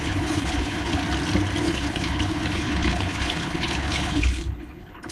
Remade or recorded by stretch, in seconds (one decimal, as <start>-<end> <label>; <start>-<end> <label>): 0.0-1.0 remade; 1.0-1.6 recorded; 1.6-5.1 remade

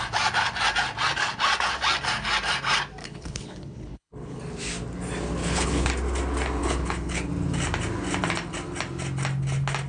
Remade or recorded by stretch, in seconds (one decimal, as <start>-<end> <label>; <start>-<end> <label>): 0.0-3.0 recorded; 3.0-4.4 remade; 4.4-5.4 recorded; 5.4-5.9 remade; 5.9-6.6 recorded; 6.6-7.3 remade; 7.3-9.9 recorded

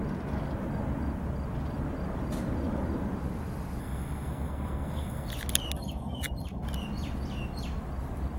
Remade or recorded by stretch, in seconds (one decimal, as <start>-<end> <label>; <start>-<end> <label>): 0.0-3.8 recorded; 3.8-5.3 remade; 5.3-8.4 recorded

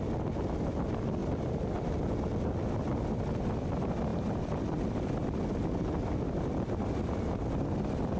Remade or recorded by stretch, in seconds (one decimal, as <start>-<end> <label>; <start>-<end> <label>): 0.0-8.2 recorded

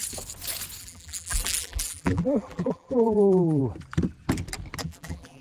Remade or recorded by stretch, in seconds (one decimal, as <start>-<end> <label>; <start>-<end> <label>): 0.0-0.8 recorded; 0.8-3.6 remade; 3.6-4.8 recorded; 4.8-5.4 remade